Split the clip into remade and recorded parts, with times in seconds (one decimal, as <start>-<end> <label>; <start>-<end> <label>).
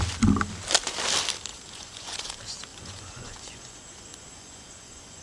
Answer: 0.0-1.5 recorded; 1.5-2.3 remade; 2.3-2.7 recorded; 2.7-5.2 remade